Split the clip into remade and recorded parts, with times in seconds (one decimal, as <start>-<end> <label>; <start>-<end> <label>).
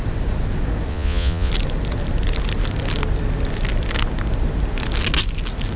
0.0-0.9 recorded; 0.9-1.5 remade; 1.5-5.8 recorded